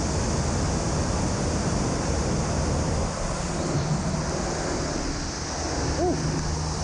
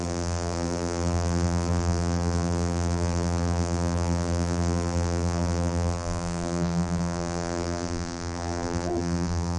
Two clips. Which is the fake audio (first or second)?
second